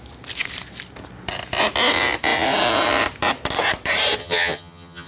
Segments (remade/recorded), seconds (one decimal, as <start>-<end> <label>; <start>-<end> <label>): 0.0-4.2 recorded; 4.2-5.1 remade